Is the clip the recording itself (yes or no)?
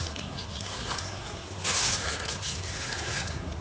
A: no